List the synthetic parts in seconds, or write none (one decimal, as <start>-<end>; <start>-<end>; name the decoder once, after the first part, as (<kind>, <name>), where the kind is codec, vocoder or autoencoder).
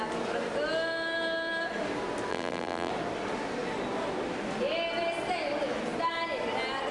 2.3-2.9 (vocoder, BigVGAN v2)